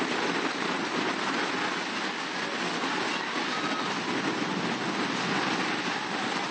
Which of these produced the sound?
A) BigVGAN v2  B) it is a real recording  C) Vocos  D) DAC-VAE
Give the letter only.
B